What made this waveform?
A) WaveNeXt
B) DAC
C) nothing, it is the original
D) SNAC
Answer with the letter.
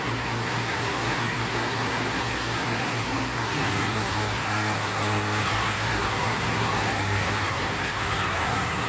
D